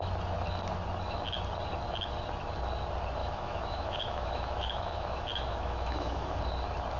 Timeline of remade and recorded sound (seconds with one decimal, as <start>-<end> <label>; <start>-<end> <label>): 0.0-3.2 recorded; 3.2-6.4 remade; 6.4-7.0 recorded